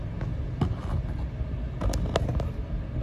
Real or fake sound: real